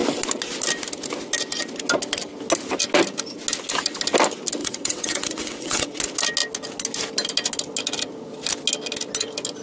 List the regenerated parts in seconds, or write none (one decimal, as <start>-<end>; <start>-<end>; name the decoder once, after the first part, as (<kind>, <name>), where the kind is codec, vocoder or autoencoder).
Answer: 4.6-6.0 (vocoder, WaveNeXt)